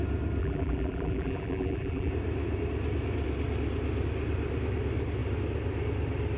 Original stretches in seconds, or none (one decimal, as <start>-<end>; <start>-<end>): 0.0-0.4; 2.1-6.4